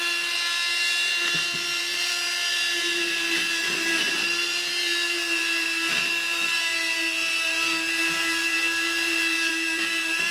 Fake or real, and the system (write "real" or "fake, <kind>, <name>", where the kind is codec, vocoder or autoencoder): fake, vocoder, BigVGAN v2